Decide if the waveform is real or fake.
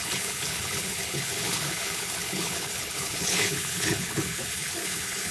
fake